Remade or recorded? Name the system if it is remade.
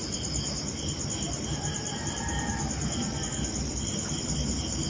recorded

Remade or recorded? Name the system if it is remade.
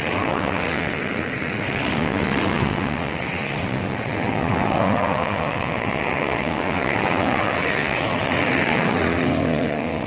remade, vocoder, WaveNeXt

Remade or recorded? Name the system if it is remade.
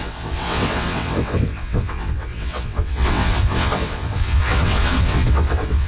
remade, vocoder, WaveNeXt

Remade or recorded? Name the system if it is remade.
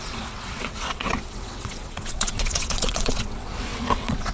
remade, vocoder, WaveNeXt